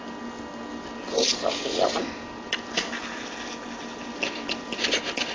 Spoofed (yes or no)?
no